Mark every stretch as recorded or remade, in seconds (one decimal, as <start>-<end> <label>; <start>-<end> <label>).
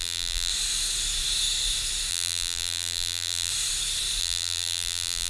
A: 0.0-0.5 remade; 0.5-2.1 recorded; 2.1-3.5 remade; 3.5-4.2 recorded; 4.2-5.3 remade